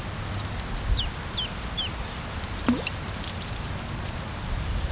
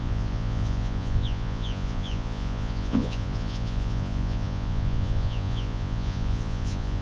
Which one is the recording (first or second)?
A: first